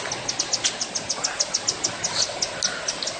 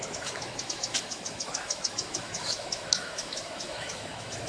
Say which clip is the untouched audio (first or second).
first